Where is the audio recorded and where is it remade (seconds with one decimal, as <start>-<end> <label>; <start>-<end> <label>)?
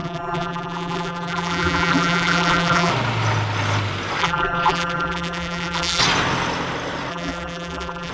0.0-2.9 remade; 2.9-4.2 recorded; 4.2-6.0 remade; 6.0-7.1 recorded; 7.1-8.1 remade